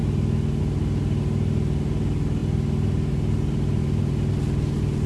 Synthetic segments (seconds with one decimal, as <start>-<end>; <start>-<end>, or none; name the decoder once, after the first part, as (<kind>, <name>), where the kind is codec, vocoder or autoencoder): none